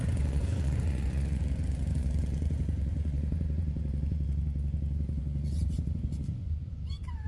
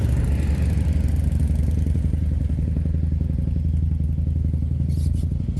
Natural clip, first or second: second